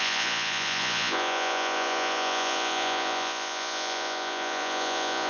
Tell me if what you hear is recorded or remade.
remade